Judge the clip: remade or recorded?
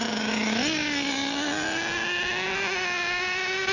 recorded